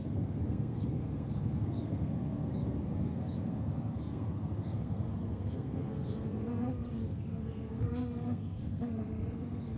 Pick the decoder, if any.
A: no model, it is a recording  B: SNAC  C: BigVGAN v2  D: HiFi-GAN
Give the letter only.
B